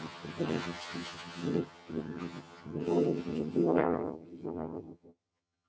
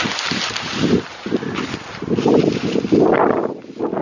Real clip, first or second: second